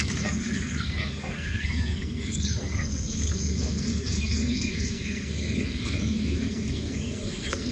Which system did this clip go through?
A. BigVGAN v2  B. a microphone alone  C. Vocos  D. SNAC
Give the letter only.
D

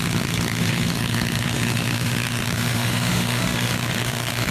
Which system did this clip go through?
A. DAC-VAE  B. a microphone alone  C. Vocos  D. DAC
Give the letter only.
A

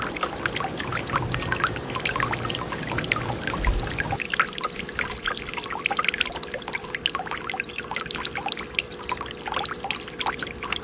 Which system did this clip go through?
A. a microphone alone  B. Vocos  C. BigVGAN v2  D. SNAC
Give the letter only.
A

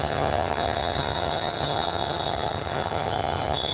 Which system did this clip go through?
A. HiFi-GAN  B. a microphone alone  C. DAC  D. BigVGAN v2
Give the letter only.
A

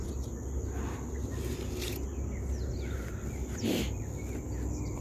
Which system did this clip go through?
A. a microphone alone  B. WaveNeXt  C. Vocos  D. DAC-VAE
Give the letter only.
A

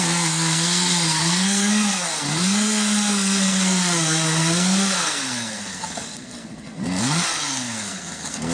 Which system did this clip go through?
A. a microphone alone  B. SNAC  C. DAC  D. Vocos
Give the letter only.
B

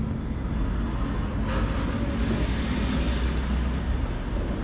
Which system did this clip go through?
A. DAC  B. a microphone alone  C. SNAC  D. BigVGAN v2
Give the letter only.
B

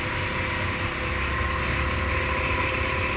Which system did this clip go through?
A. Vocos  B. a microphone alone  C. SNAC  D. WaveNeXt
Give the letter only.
B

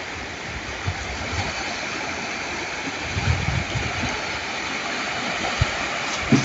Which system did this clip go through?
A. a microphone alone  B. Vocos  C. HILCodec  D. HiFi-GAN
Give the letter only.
A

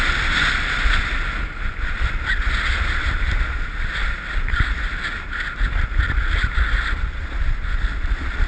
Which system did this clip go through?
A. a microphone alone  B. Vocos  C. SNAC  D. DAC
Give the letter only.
A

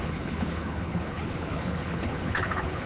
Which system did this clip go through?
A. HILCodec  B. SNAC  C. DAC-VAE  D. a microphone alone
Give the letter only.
A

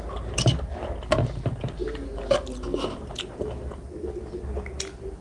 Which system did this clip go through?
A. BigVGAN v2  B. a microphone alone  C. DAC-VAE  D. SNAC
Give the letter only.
B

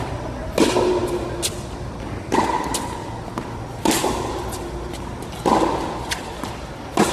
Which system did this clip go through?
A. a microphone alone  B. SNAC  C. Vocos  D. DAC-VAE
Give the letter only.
A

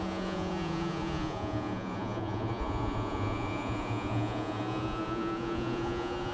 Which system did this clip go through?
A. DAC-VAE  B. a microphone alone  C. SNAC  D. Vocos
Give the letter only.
D